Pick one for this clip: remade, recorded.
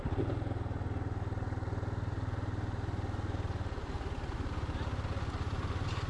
recorded